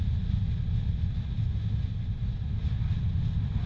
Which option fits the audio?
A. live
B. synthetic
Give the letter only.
A